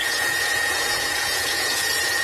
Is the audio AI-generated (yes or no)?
yes